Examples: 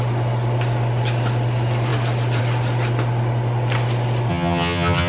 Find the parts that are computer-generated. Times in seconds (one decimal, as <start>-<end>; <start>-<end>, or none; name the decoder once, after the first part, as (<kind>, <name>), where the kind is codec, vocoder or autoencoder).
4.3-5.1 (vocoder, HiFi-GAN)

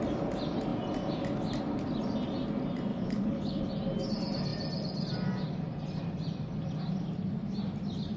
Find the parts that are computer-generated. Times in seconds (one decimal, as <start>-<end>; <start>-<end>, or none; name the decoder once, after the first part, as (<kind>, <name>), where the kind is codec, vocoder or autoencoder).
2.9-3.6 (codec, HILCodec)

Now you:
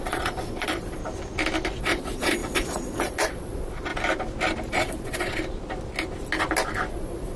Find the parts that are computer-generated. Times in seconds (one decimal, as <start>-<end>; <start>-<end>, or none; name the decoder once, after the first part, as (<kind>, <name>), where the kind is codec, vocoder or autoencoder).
0.0-1.0 (vocoder, Vocos); 1.8-3.9; 4.7-5.4; 6.9-7.4